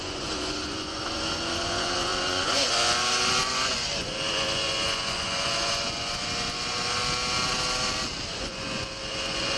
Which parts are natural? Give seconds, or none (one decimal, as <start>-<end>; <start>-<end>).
7.0-8.3